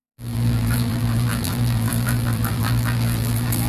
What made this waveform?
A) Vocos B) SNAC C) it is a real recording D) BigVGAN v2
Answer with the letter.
D